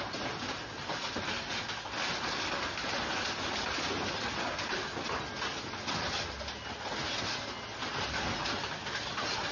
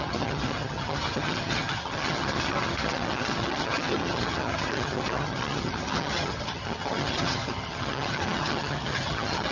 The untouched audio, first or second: first